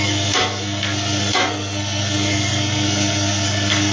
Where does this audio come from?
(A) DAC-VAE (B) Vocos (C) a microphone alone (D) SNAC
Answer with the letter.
D